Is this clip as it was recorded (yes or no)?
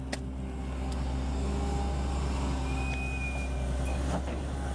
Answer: yes